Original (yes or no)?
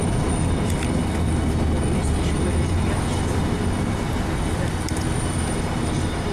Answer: yes